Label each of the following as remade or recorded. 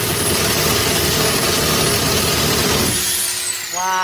recorded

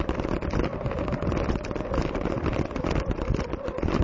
remade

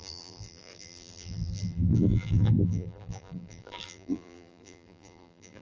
remade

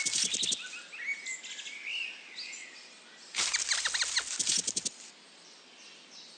recorded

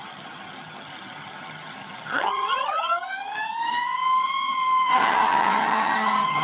remade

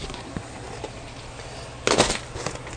recorded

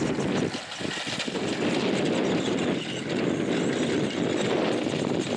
recorded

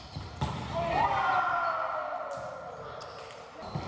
recorded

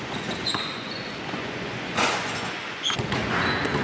remade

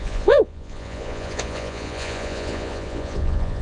remade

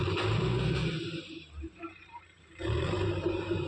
remade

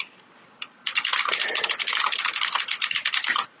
recorded